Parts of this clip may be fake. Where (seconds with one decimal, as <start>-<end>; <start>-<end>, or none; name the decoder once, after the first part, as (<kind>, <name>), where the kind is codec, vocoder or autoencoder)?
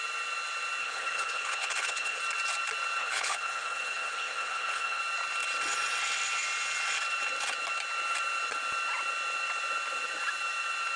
0.8-2.2 (codec, HILCodec); 3.0-5.0